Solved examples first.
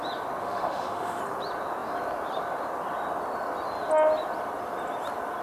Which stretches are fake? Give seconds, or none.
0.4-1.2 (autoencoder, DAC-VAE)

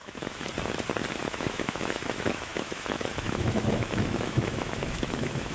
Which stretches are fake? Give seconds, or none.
0.0-0.5 (autoencoder, DAC-VAE); 1.2-5.5

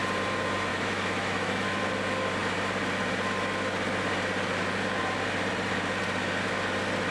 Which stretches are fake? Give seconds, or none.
0.7-1.8 (autoencoder, DAC-VAE)

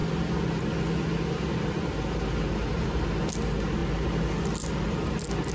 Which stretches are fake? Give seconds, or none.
none

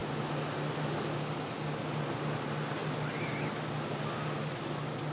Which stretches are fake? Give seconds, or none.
none

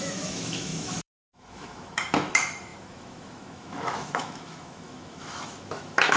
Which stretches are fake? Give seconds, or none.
0.0-6.2 (autoencoder, DAC-VAE)